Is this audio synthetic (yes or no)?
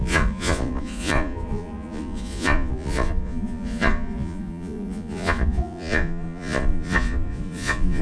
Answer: yes